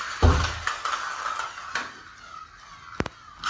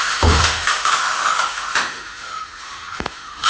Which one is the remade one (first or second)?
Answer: second